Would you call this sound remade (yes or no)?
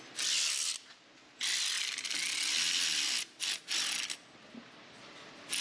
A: no